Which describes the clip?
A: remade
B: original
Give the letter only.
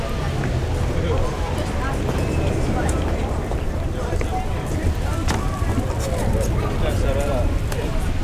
B